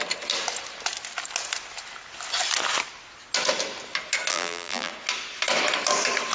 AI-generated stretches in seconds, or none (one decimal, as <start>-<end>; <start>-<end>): 4.3-4.9